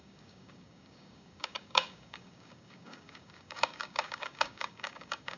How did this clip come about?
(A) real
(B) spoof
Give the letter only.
B